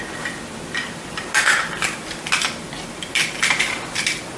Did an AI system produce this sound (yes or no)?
no